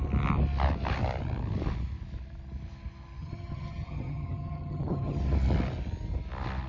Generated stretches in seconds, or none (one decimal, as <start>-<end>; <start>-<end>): 3.2-5.2